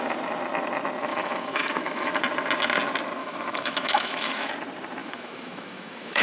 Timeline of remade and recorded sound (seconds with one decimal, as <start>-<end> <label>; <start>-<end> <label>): 0.0-1.1 recorded; 1.1-2.1 remade; 2.1-3.2 recorded; 3.2-4.5 remade; 4.5-5.0 recorded; 5.0-6.2 remade